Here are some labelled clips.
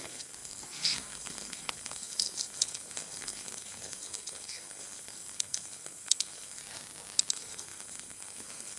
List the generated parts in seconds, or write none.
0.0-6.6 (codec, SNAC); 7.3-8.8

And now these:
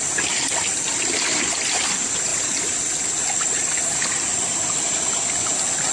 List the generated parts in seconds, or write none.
none